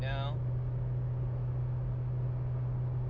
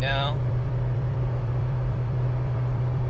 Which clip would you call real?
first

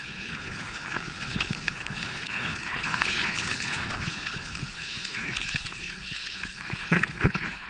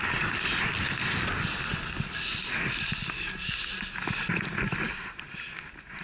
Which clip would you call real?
second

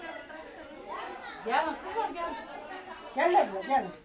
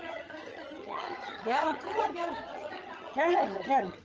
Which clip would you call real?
first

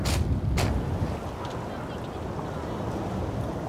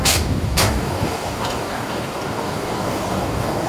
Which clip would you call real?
first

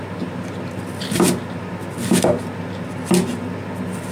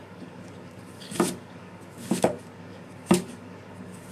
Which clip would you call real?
first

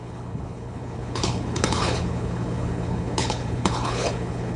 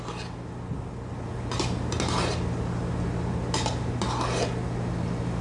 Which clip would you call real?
second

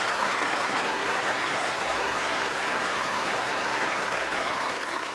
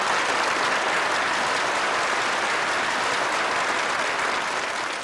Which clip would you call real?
second